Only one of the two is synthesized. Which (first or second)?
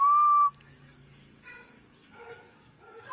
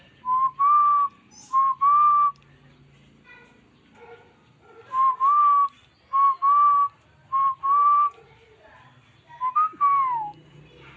first